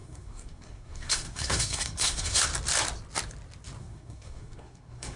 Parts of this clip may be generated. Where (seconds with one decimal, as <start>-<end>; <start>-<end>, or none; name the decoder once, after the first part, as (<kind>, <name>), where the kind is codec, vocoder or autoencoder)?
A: 0.0-2.5 (codec, SNAC); 3.8-5.2

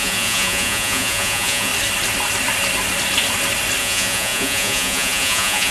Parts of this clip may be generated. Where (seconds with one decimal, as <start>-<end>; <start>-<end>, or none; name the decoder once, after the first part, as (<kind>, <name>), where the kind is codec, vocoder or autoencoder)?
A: 0.0-1.7 (vocoder, Vocos); 3.8-5.7

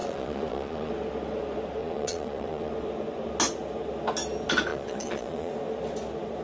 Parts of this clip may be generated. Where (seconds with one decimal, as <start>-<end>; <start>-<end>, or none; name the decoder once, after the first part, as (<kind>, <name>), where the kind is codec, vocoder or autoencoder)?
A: 0.0-0.9 (vocoder, Vocos); 1.8-2.7; 4.7-5.5

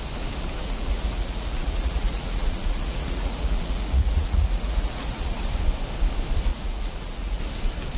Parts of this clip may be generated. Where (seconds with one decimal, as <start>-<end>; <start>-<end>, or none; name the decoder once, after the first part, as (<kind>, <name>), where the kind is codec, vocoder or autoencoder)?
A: 0.6-5.4 (vocoder, Vocos); 6.5-7.4

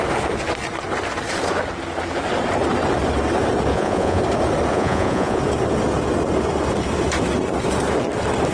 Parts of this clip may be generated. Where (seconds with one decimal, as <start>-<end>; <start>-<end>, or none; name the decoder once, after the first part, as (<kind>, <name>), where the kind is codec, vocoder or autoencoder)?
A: 3.7-4.2 (vocoder, Vocos); 4.7-5.4